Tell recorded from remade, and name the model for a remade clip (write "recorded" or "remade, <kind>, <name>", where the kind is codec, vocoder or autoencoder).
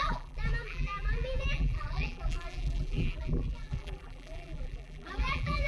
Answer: remade, vocoder, BigVGAN v2